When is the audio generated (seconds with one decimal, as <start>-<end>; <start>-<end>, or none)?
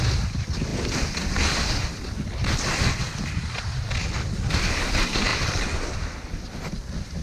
5.3-6.5